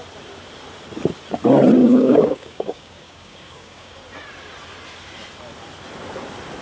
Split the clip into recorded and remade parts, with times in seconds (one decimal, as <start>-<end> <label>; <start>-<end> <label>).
0.0-1.8 recorded; 1.8-3.9 remade; 3.9-6.6 recorded